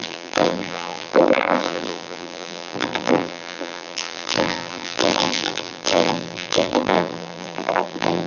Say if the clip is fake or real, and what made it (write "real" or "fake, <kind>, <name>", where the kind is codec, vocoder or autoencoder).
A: fake, vocoder, BigVGAN v2